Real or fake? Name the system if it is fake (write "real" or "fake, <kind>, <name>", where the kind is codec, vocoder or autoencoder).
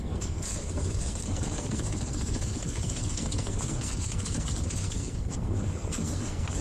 fake, codec, SNAC